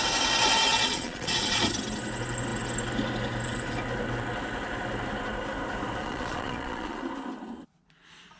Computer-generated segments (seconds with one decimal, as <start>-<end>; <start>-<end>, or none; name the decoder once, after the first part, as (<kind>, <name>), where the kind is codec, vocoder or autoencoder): 0.7-1.6 (vocoder, Vocos); 6.0-7.1

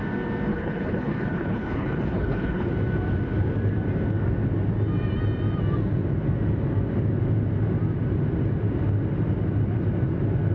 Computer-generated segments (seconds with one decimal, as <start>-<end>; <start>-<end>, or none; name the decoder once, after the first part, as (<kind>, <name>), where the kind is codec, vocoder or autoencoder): 0.5-2.7 (codec, HILCodec)